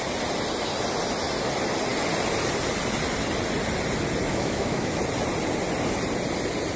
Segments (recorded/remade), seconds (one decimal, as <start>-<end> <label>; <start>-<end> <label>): 0.0-4.3 recorded; 4.3-5.0 remade; 5.0-6.8 recorded

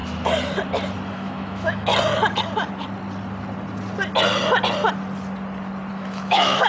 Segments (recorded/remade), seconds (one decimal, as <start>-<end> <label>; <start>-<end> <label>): 0.0-1.1 recorded; 1.1-1.9 remade; 1.9-5.9 recorded; 5.9-6.7 remade

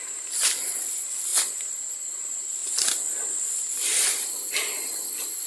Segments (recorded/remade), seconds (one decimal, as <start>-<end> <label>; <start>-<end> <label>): 0.0-5.5 recorded

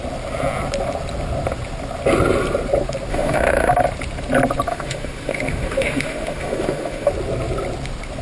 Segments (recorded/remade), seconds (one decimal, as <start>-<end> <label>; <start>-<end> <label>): 0.0-3.1 recorded; 3.1-3.7 remade; 3.7-4.7 recorded; 4.7-7.1 remade; 7.1-8.2 recorded

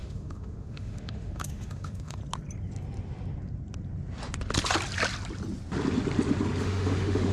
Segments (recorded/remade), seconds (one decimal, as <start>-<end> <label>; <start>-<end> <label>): 0.0-2.2 remade; 2.2-6.6 recorded; 6.6-7.3 remade